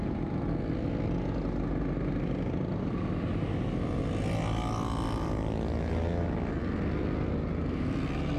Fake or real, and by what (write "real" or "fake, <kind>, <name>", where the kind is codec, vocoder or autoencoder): real